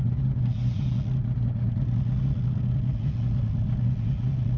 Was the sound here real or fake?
real